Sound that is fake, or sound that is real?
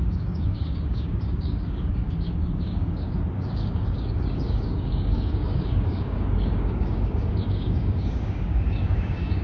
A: fake